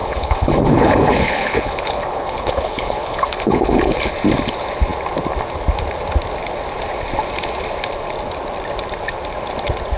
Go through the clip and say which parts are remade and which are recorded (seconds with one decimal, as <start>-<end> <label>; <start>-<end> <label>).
0.0-4.1 remade; 4.1-10.0 recorded